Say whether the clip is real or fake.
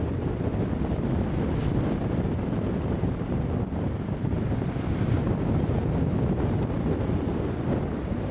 real